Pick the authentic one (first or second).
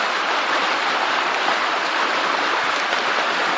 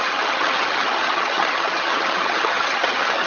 first